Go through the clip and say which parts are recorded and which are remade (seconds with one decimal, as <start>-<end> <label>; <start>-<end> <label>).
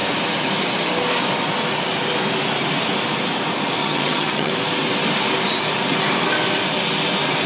0.0-3.8 recorded; 3.8-4.5 remade; 4.5-7.5 recorded